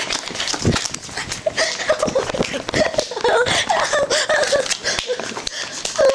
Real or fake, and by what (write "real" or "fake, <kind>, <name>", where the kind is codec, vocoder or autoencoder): real